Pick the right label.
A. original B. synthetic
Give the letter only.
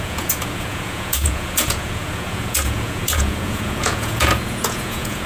B